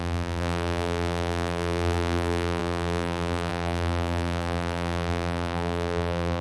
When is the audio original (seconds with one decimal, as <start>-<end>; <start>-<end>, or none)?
none